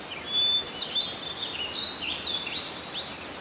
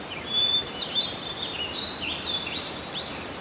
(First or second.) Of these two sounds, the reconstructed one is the second